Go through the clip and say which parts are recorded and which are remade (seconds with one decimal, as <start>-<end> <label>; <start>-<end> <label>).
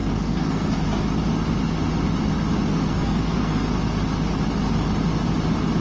0.0-0.7 remade; 0.7-2.7 recorded; 2.7-3.7 remade; 3.7-5.8 recorded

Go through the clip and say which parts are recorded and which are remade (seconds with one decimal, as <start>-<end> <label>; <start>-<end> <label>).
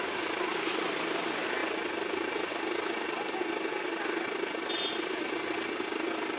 0.0-6.4 recorded